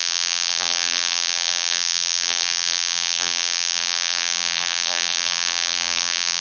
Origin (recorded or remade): remade